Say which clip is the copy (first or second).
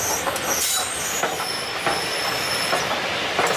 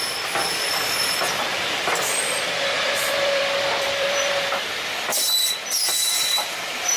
second